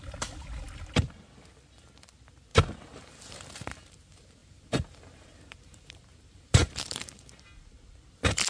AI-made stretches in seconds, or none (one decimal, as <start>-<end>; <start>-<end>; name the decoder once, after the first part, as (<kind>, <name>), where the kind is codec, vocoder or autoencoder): 2.5-3.4 (vocoder, BigVGAN v2); 4.4-7.2